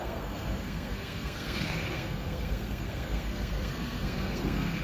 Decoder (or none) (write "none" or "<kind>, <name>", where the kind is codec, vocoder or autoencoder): codec, SNAC